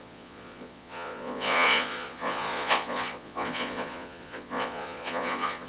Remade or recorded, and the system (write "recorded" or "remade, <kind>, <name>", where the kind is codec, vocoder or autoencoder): remade, vocoder, Vocos